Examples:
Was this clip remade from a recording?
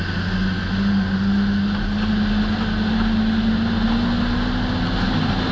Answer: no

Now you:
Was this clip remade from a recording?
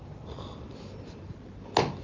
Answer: no